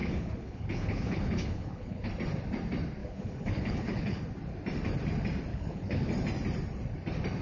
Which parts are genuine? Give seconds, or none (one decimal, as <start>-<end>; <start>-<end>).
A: 2.1-3.0; 4.2-5.5; 6.1-7.4